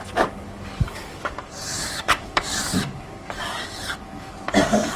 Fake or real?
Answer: fake